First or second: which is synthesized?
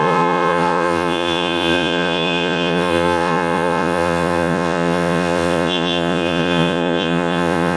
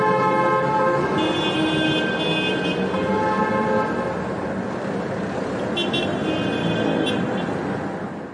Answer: first